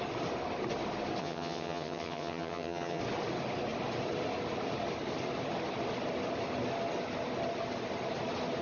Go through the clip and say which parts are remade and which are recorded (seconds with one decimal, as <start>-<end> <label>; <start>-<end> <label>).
0.0-1.2 recorded; 1.2-3.0 remade; 3.0-8.6 recorded